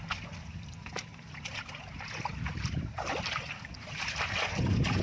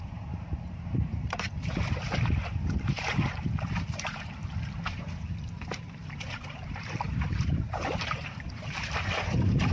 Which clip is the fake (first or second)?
second